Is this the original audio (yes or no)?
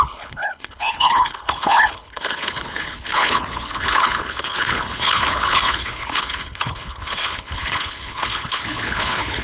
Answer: no